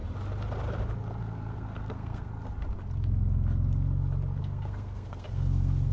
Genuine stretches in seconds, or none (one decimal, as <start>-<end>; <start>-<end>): 0.0-1.2; 2.3-4.4

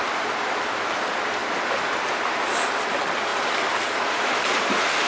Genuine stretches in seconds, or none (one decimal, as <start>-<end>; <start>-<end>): 0.0-5.1

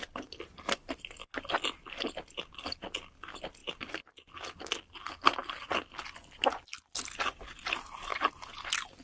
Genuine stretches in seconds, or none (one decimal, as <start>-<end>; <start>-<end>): 0.0-9.0

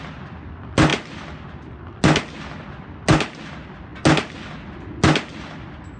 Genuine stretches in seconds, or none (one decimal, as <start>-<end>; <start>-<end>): 0.0-6.0

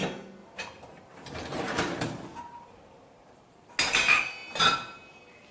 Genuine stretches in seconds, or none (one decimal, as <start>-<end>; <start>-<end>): 0.0-0.4; 3.7-5.5

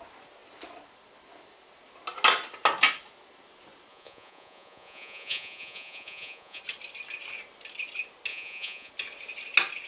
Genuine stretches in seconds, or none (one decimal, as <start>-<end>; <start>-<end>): 0.0-3.9; 6.6-8.3; 8.9-9.9

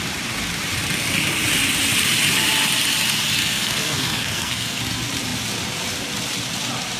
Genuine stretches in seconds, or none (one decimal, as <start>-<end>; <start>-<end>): 0.0-3.4; 4.8-7.0